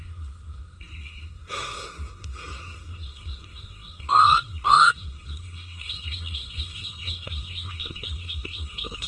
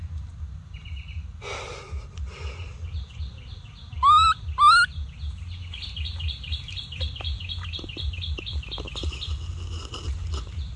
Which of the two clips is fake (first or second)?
first